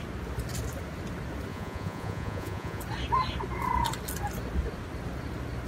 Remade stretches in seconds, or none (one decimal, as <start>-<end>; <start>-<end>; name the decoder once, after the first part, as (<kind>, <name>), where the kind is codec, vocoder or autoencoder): 1.5-2.8 (vocoder, Vocos)

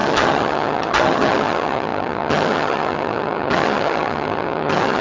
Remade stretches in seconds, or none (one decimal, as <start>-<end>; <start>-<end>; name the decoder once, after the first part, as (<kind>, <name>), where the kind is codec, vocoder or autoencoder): 0.0-5.0 (vocoder, HiFi-GAN)

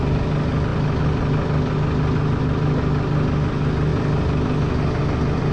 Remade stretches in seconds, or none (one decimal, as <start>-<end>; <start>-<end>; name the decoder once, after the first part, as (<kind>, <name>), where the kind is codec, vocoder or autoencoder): none

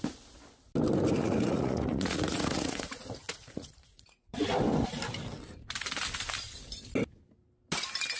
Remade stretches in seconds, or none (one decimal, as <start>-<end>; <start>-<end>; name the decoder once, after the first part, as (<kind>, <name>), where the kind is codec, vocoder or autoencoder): 1.2-4.4 (vocoder, Vocos)

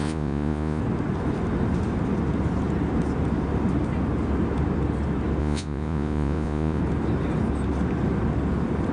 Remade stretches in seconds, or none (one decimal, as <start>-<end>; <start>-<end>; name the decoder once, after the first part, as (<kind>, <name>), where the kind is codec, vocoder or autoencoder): 0.0-0.8 (vocoder, Vocos); 5.4-6.8

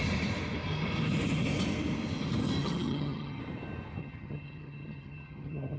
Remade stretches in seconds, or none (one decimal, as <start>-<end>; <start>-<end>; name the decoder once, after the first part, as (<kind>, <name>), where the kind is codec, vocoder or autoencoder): 2.6-3.4 (vocoder, HiFi-GAN); 4.0-5.8

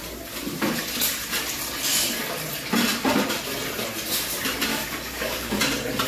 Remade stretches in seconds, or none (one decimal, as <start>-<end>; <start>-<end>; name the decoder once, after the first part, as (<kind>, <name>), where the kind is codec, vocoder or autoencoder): 4.7-5.6 (codec, DAC)

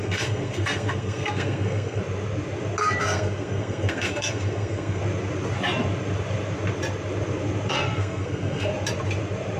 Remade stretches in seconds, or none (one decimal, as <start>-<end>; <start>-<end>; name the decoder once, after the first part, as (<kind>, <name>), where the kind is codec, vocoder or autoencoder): 0.0-2.0 (codec, SNAC); 3.0-5.0; 7.7-8.7